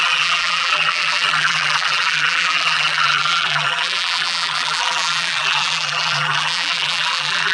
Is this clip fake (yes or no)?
yes